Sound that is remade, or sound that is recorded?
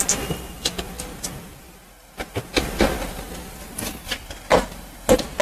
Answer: recorded